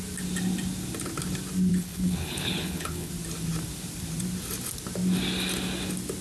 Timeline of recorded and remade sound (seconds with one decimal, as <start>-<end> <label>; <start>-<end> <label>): 0.0-1.7 recorded; 1.7-3.1 remade; 3.1-6.2 recorded